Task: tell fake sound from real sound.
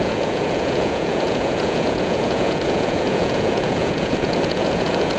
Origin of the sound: fake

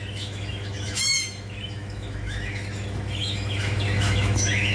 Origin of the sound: fake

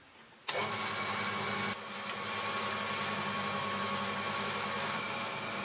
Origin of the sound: real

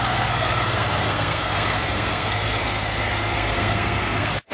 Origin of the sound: fake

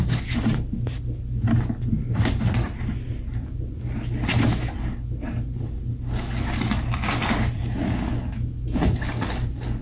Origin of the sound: real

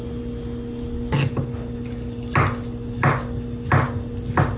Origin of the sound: real